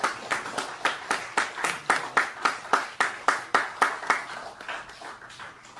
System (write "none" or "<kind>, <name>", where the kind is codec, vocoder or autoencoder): none